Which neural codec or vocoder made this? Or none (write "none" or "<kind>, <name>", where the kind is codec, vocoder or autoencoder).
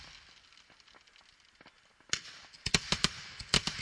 none